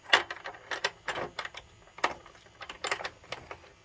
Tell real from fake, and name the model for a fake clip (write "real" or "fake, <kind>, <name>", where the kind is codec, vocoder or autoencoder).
real